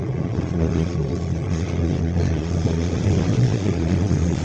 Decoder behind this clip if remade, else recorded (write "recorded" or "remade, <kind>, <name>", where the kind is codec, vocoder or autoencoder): remade, vocoder, Vocos